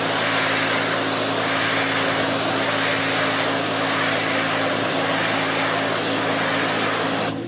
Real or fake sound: real